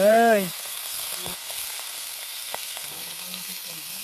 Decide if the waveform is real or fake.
fake